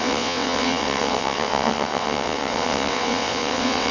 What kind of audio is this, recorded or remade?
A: remade